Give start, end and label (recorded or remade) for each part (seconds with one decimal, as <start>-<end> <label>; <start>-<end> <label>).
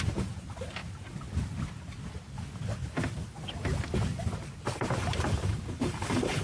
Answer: 0.0-0.8 remade; 0.8-4.6 recorded; 4.6-6.4 remade